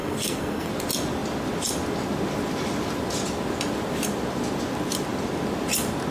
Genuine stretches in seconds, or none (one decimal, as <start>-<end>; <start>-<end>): 0.7-6.1